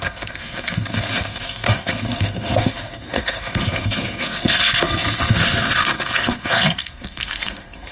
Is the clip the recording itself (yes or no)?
no